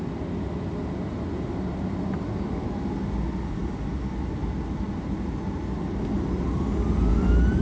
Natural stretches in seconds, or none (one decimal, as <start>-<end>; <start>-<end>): 0.0-7.6